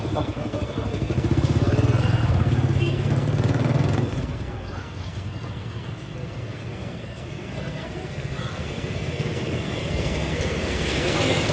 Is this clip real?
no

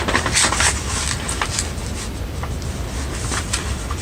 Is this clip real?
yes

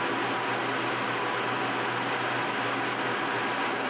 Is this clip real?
yes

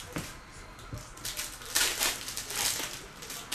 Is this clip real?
yes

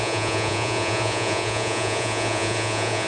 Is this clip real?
no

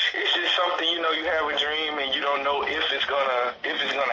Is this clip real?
yes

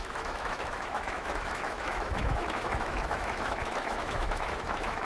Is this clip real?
no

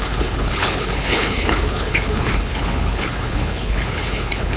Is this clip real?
no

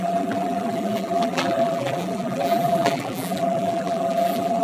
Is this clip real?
no